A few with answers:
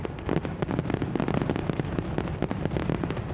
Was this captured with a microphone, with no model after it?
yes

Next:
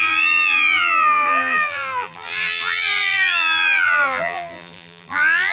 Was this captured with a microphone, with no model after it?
no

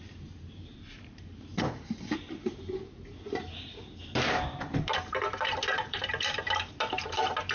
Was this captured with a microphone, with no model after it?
no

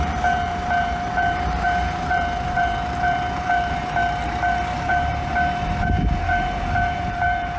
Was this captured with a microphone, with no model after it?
no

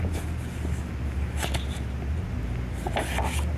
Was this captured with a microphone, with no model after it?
yes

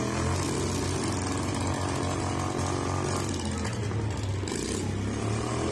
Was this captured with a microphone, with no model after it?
yes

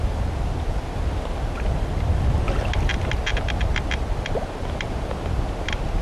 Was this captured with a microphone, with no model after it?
yes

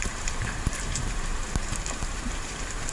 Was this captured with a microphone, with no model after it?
no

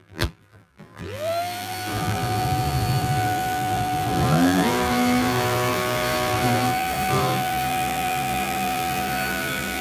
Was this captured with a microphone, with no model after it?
no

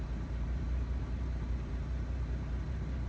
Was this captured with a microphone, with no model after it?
no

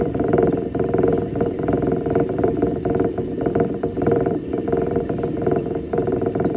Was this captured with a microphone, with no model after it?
no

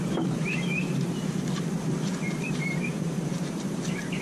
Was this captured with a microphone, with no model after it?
no